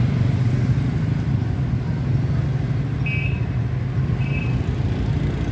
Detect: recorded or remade recorded